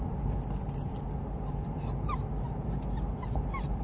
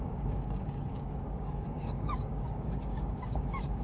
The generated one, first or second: second